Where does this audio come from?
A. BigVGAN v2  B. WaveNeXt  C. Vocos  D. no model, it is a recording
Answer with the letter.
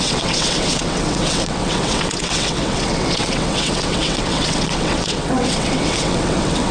B